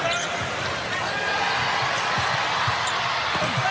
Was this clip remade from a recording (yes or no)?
no